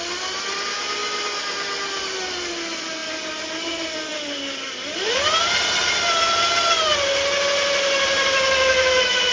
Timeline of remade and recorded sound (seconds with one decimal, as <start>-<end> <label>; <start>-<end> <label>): 0.0-9.3 recorded